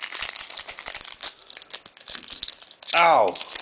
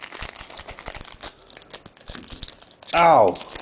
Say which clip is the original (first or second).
second